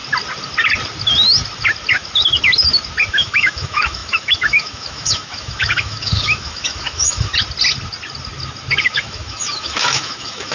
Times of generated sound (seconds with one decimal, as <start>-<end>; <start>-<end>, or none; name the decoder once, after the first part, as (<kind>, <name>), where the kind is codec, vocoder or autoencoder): 3.1-7.3 (autoencoder, DAC-VAE); 8.8-10.5